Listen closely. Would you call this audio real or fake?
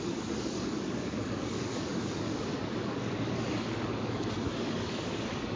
fake